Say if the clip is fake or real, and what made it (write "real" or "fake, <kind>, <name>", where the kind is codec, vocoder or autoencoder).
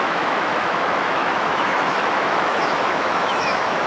fake, autoencoder, DAC-VAE